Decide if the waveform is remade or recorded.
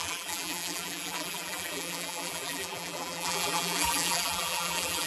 remade